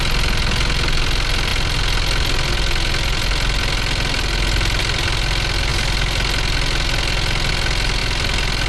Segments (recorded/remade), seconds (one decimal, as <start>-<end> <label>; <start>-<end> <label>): 0.0-8.7 recorded